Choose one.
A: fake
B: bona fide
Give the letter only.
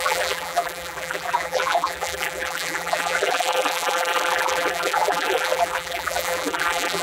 A